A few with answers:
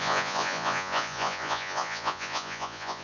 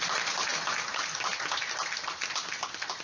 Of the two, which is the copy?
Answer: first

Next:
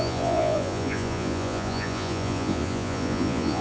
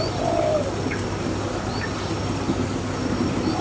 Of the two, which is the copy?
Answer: first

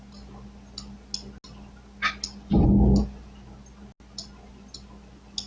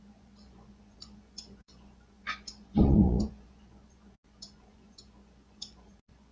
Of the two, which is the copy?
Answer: second